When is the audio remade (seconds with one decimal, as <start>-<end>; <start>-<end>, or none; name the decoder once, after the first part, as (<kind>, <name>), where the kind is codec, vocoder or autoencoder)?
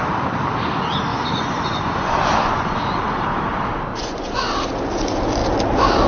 1.1-2.8 (vocoder, Vocos); 3.9-4.4